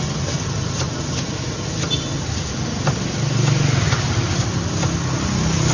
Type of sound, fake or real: real